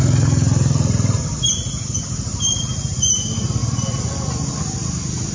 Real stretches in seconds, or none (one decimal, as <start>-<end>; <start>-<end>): 0.0-5.3